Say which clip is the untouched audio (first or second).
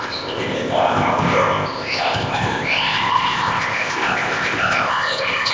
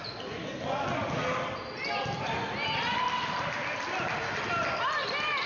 second